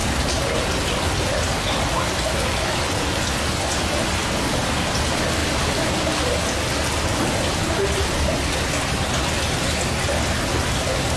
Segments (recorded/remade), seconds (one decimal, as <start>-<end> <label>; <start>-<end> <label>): 0.0-11.2 recorded